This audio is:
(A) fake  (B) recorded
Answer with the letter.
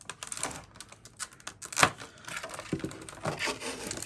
B